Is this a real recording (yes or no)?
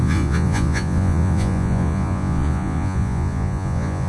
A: no